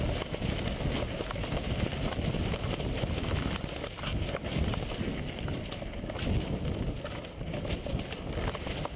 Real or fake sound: real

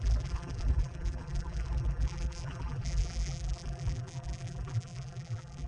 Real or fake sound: fake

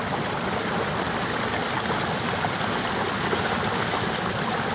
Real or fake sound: real